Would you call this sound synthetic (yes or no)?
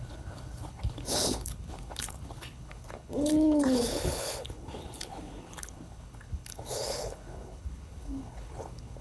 yes